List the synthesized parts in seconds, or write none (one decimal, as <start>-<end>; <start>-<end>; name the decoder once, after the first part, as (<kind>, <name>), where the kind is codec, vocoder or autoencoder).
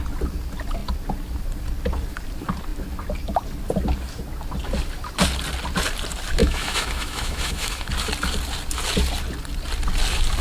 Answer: 6.4-7.9 (autoencoder, DAC-VAE)